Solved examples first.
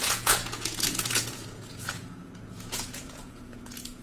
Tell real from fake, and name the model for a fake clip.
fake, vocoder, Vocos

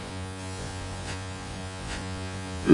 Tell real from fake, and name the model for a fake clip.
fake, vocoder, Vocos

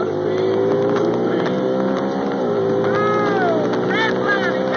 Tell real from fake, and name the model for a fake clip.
real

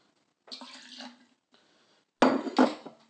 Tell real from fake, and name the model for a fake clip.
real